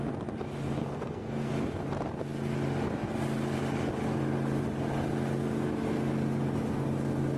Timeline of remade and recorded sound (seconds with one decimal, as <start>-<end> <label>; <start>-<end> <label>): 0.0-0.8 recorded; 0.8-1.5 remade; 1.5-7.4 recorded